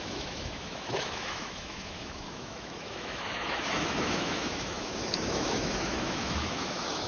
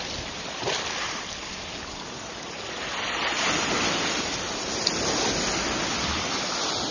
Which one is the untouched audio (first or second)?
second